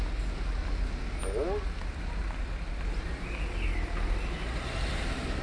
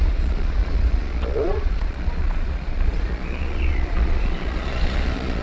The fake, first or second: second